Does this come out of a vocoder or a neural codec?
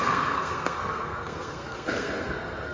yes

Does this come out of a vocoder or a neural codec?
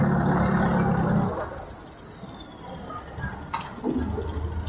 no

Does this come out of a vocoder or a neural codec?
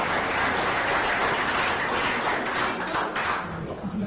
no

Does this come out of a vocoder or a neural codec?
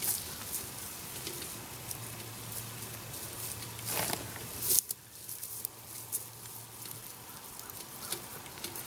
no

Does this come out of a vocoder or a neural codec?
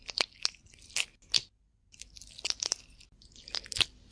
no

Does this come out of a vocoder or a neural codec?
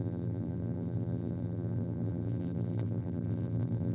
yes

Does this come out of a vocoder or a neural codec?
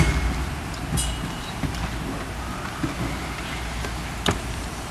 no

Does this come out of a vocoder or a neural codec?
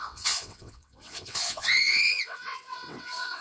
yes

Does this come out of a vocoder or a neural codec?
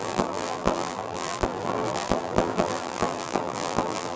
yes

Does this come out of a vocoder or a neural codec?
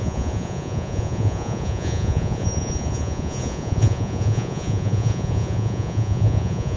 yes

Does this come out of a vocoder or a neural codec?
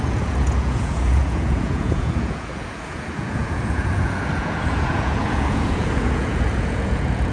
yes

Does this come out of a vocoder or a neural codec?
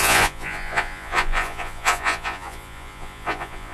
yes